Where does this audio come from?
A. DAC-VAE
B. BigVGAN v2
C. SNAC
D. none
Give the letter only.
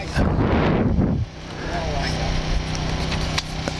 D